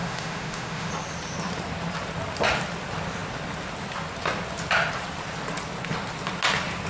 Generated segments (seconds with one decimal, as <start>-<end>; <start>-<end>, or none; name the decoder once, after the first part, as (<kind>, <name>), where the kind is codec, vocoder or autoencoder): 0.0-0.9 (autoencoder, DAC-VAE)